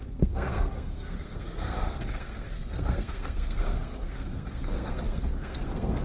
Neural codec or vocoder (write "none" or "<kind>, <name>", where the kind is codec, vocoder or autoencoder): codec, SNAC